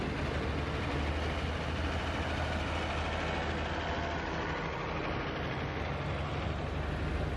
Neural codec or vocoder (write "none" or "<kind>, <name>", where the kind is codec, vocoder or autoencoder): none